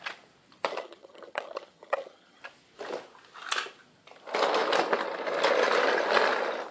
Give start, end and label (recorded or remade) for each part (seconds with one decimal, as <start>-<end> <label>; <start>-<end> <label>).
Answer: 0.0-0.7 recorded; 0.7-2.4 remade; 2.4-6.7 recorded